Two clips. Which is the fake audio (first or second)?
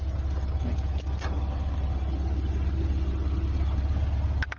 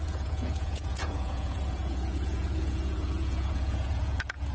second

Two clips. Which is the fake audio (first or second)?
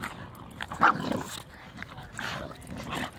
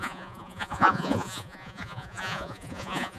second